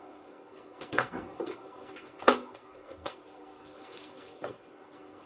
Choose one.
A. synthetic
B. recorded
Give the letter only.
A